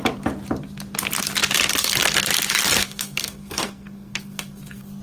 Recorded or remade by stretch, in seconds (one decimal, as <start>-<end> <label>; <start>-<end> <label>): 0.0-2.8 recorded; 2.8-5.0 remade